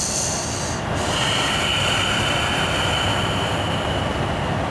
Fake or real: real